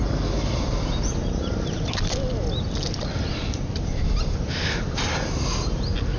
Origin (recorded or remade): recorded